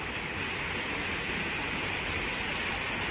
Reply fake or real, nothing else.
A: real